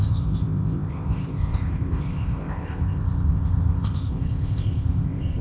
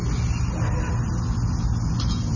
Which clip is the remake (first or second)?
first